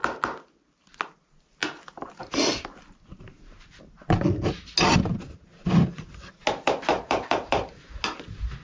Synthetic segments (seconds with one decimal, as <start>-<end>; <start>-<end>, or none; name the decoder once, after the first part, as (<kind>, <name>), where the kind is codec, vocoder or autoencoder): 6.9-8.0 (vocoder, BigVGAN v2)